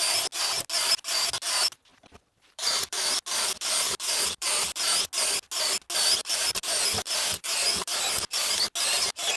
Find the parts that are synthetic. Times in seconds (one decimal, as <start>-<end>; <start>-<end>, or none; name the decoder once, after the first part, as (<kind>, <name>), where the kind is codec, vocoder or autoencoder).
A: 1.9-4.8 (vocoder, BigVGAN v2); 6.2-8.2